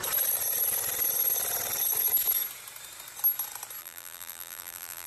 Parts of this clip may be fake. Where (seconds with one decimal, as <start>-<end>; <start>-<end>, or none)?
3.8-5.1

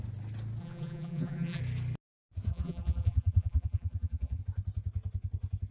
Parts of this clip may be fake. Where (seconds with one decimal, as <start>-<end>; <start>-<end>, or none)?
0.6-1.6; 2.5-4.4

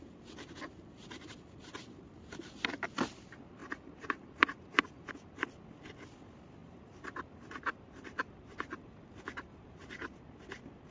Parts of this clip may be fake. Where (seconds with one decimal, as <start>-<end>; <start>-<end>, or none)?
3.6-5.1; 6.6-10.4

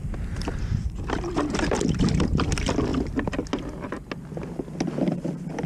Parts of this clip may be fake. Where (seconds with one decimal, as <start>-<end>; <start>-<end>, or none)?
0.0-2.9; 4.9-5.7

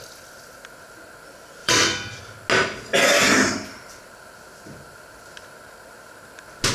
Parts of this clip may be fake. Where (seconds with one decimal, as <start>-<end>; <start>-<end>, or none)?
1.6-2.2; 3.2-4.2